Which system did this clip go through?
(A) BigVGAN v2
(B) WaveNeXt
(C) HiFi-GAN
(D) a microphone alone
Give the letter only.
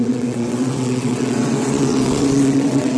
B